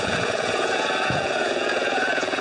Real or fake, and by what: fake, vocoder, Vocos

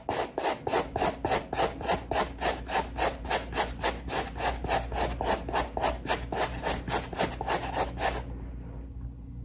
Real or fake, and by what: real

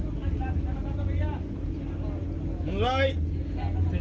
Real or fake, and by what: real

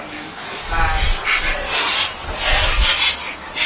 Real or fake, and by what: real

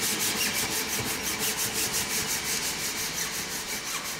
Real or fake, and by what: real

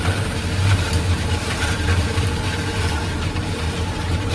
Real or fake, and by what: fake, vocoder, BigVGAN v2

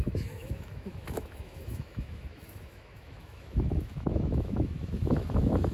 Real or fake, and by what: fake, autoencoder, DAC-VAE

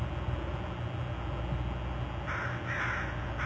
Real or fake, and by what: real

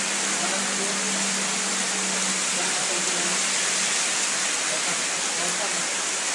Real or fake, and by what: real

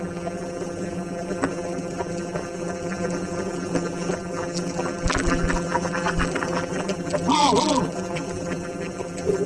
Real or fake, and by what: fake, vocoder, BigVGAN v2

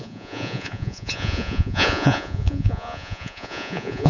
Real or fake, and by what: fake, vocoder, Vocos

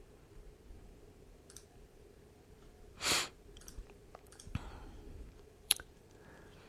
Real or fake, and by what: fake, vocoder, BigVGAN v2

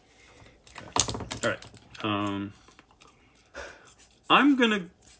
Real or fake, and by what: real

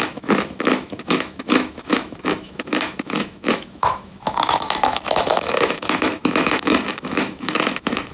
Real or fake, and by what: fake, autoencoder, DAC-VAE